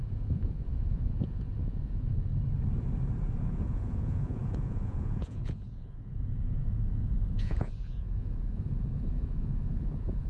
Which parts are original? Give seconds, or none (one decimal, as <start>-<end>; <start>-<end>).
2.3-3.4